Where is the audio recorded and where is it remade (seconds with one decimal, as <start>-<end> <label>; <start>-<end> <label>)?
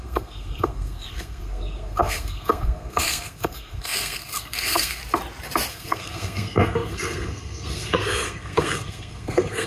0.0-5.0 remade; 5.0-5.7 recorded; 5.7-9.7 remade